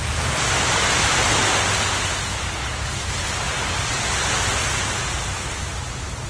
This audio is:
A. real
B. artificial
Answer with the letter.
A